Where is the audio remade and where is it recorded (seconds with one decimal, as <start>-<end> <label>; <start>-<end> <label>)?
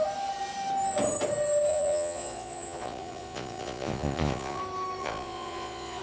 0.0-1.7 recorded; 1.7-4.6 remade; 4.6-5.0 recorded; 5.0-6.0 remade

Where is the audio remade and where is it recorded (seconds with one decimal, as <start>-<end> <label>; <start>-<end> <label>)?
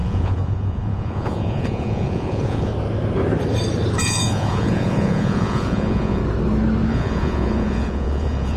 0.0-2.7 remade; 2.7-4.0 recorded; 4.0-6.2 remade; 6.2-6.9 recorded; 6.9-8.6 remade